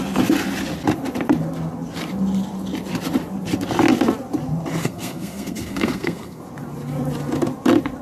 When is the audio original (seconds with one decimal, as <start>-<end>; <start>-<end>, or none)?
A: 0.0-4.8; 6.4-8.0

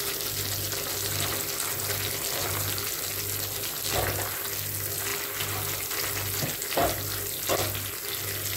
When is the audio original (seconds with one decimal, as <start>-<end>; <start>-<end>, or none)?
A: 0.0-8.6

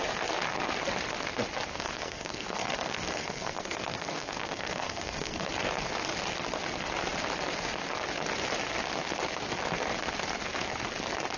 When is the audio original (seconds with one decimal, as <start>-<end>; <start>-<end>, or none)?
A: 0.0-1.7; 5.5-11.4